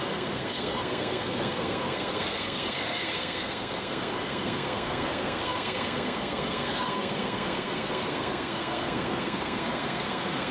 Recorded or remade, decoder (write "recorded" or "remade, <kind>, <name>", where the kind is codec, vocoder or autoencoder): remade, codec, SNAC